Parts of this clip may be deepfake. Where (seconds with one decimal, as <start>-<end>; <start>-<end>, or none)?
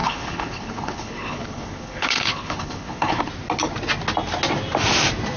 0.0-3.2